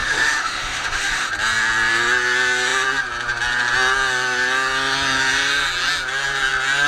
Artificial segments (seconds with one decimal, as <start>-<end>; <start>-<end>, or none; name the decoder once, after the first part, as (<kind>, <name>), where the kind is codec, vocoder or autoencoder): 0.0-1.3 (autoencoder, DAC-VAE)